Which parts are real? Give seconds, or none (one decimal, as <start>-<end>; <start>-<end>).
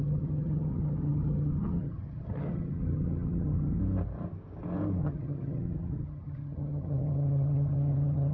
3.8-5.0